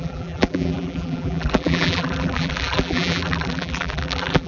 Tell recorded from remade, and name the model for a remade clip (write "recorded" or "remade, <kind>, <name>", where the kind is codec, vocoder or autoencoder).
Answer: remade, vocoder, BigVGAN v2